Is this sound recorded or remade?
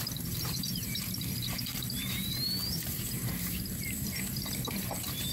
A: remade